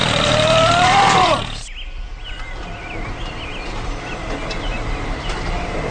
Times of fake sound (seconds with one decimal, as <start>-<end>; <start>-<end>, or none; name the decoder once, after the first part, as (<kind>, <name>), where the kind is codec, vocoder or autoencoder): 0.0-3.5 (vocoder, BigVGAN v2); 4.7-5.9

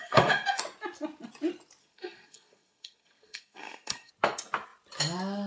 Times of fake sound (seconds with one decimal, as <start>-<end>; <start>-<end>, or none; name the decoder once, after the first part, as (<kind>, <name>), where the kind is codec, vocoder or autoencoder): 0.0-0.6 (codec, SNAC); 1.8-4.1

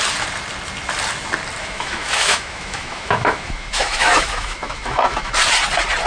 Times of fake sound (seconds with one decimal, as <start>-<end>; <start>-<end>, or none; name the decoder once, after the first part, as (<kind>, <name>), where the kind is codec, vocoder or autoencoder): 1.6-5.3 (autoencoder, DAC-VAE)

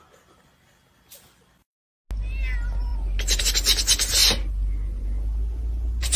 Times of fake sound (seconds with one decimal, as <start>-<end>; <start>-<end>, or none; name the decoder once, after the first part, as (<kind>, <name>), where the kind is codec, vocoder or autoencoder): none